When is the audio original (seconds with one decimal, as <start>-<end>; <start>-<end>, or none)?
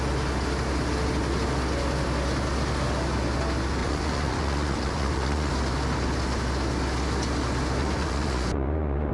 0.0-3.8; 5.5-7.8